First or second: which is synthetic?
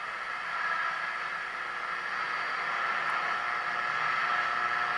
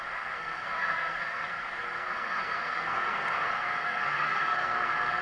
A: second